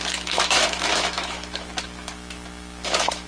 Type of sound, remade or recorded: remade